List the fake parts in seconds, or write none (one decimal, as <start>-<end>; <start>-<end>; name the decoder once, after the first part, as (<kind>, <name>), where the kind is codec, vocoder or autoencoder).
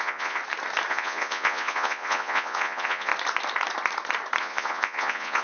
0.0-0.4 (vocoder, Vocos); 0.9-3.1; 4.4-5.4